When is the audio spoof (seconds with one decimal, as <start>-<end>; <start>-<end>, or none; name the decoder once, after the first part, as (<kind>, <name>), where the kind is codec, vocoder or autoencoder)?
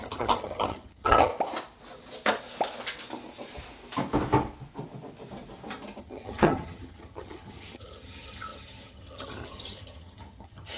0.0-1.3 (vocoder, HiFi-GAN); 6.0-10.8